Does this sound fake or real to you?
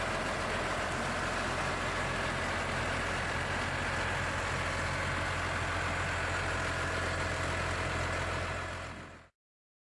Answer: real